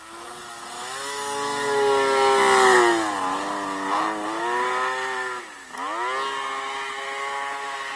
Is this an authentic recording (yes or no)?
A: yes